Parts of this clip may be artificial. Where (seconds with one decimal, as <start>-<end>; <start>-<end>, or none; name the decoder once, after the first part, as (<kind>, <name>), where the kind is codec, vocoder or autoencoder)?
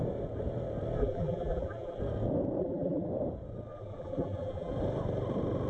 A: 1.0-2.0 (vocoder, BigVGAN v2); 2.6-3.1; 3.7-4.7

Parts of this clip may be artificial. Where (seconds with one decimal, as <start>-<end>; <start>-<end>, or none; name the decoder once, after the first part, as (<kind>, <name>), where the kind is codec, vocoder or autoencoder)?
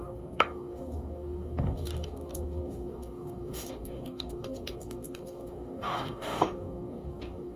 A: 0.0-7.6 (codec, DAC)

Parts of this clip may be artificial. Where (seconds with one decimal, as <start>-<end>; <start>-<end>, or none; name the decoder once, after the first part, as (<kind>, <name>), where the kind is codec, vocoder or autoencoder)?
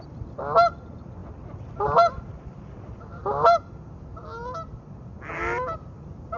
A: none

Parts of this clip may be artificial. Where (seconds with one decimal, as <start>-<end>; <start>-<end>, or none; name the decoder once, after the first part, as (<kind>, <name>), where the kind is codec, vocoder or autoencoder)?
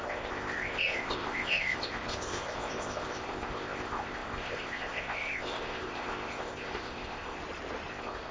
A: 0.0-7.4 (codec, ZipCodec); 7.9-8.3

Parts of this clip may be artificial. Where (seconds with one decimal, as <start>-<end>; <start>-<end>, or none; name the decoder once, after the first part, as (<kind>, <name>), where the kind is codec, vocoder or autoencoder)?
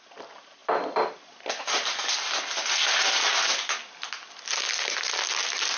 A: none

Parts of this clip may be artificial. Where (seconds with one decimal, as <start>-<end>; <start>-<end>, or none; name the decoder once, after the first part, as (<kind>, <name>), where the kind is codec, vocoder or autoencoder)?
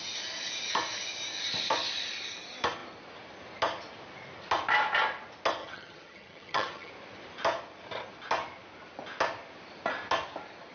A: 5.6-6.9 (vocoder, HiFi-GAN)